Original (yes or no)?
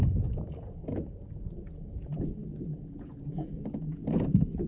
no